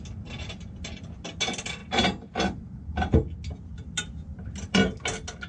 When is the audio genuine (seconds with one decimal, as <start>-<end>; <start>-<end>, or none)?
0.0-5.5